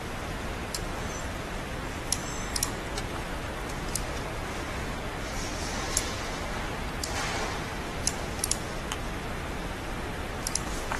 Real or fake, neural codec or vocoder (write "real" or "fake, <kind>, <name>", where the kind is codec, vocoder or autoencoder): real